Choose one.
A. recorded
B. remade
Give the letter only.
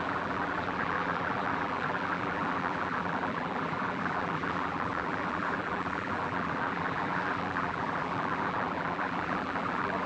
B